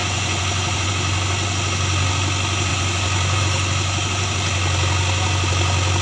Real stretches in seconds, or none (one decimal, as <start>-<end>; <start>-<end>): 0.9-2.7; 3.4-6.0